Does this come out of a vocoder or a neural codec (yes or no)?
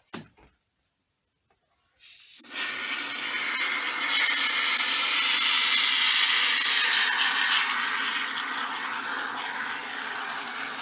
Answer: no